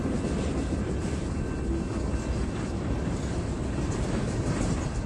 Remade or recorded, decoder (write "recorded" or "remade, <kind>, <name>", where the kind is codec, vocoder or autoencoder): recorded